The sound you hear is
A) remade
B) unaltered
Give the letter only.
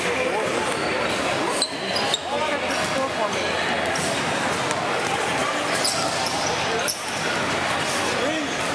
B